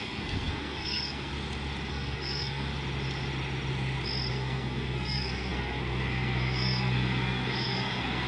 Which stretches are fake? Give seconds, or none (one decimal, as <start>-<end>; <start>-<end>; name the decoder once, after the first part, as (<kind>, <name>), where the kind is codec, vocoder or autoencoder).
0.0-1.3 (codec, SNAC); 1.9-2.7; 4.3-8.3